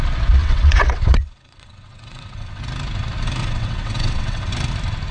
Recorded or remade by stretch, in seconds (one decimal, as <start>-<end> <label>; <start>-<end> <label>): 0.0-0.4 recorded; 0.4-2.6 remade; 2.6-3.4 recorded; 3.4-4.5 remade; 4.5-5.1 recorded